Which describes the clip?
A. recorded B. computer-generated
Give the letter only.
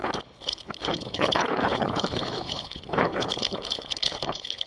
B